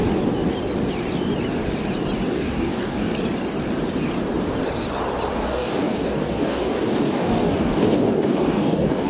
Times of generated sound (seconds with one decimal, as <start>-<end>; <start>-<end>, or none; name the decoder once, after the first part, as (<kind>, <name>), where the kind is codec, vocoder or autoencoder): 2.3-3.1 (codec, DAC); 5.3-9.1